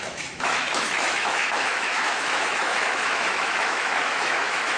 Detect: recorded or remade remade